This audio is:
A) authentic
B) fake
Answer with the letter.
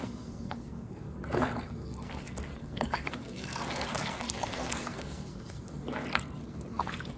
B